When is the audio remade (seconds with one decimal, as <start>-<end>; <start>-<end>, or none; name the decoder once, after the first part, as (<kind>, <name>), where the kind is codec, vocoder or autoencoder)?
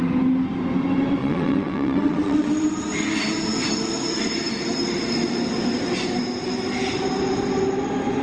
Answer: 1.2-2.5 (vocoder, WaveNeXt)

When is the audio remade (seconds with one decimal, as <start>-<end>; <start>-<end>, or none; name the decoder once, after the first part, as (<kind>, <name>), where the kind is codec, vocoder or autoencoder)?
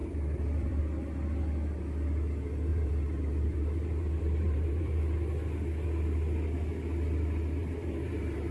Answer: 0.0-0.8 (vocoder, BigVGAN v2); 2.7-5.0; 7.6-8.5